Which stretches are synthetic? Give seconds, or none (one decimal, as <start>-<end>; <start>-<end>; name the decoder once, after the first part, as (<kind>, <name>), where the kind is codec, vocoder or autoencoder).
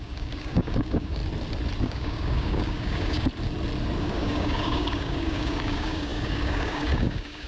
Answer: 0.0-1.2 (codec, DAC); 1.8-3.3; 4.0-7.5